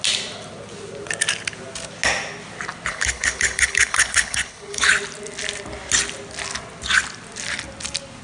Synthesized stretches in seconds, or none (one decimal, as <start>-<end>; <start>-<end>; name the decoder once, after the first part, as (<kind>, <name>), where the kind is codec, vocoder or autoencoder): 2.9-4.9 (codec, HILCodec)